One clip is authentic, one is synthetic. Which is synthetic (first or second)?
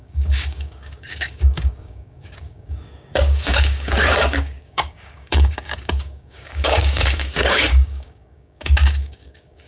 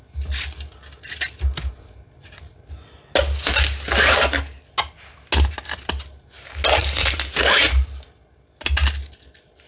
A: first